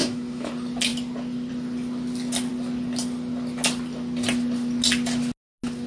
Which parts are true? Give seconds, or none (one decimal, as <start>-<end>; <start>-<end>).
0.5-5.9